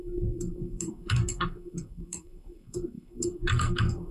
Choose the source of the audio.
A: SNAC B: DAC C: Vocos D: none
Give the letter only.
A